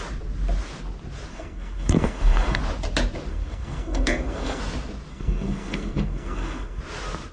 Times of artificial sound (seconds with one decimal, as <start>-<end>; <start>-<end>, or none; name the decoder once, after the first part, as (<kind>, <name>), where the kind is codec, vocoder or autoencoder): 1.3-2.6 (codec, SNAC); 3.3-4.6; 5.1-6.8